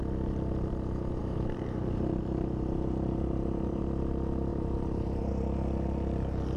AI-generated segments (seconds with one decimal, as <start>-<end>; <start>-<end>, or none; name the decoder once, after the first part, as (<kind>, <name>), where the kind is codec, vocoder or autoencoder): 1.2-3.8 (vocoder, BigVGAN v2); 4.5-5.3